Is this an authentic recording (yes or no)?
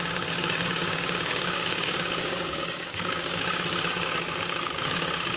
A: no